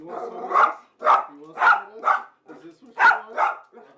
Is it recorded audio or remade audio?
recorded